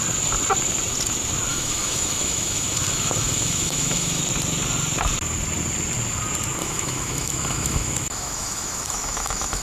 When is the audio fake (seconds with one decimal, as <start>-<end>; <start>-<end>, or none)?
1.5-4.2; 6.6-9.6